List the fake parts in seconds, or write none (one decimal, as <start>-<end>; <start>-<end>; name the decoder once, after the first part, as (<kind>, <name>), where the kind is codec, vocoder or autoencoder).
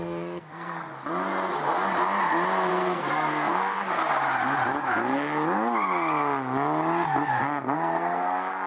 0.0-0.9 (codec, SNAC); 2.7-4.0; 7.3-8.7